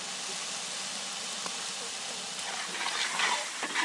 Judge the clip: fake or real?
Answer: real